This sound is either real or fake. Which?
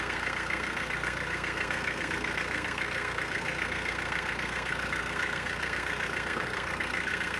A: fake